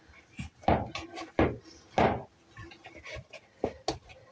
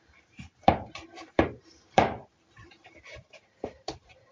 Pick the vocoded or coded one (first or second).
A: second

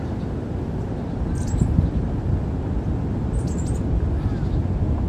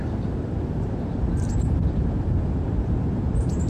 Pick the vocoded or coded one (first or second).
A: second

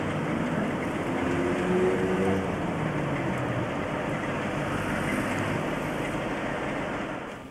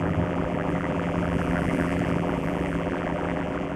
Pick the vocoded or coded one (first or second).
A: second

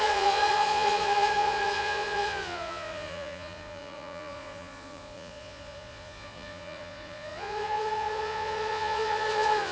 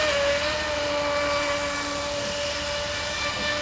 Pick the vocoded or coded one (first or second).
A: first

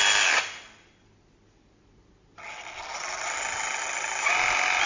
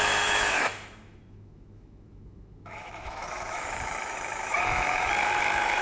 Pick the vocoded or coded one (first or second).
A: second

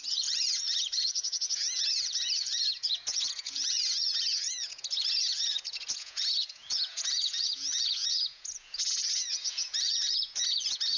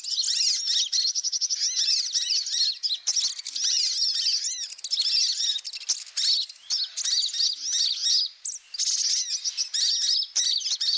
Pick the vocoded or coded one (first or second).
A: first